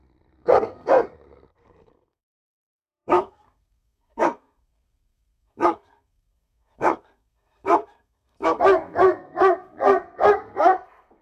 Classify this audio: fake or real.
fake